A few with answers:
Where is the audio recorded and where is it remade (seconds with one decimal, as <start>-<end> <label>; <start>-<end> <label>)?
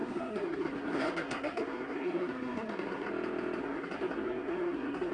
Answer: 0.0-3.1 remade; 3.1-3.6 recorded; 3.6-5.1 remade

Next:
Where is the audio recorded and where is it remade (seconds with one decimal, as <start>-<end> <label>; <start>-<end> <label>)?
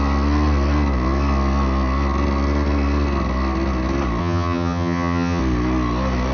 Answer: 0.0-4.2 recorded; 4.2-5.4 remade; 5.4-6.3 recorded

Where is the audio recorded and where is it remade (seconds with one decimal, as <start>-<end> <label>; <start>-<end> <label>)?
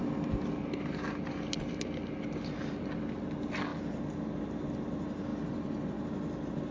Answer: 0.0-6.7 recorded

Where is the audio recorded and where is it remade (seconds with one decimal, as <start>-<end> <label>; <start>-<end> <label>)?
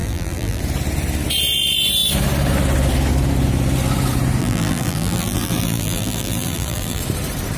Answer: 0.0-0.6 remade; 0.6-4.4 recorded; 4.4-7.0 remade; 7.0-7.6 recorded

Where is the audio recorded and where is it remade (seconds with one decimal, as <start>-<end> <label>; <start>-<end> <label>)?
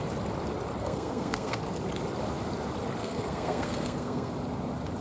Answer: 0.0-0.8 recorded; 0.8-1.6 remade; 1.6-3.0 recorded; 3.0-4.3 remade; 4.3-5.0 recorded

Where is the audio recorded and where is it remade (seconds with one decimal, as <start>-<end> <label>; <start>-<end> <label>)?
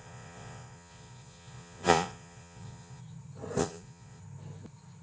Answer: 0.0-3.0 remade; 3.0-3.6 recorded; 3.6-4.2 remade; 4.2-5.0 recorded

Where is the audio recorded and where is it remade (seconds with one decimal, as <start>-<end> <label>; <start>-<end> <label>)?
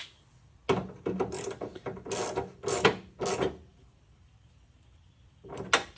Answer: 0.0-6.0 recorded